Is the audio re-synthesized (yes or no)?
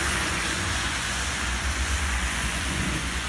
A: yes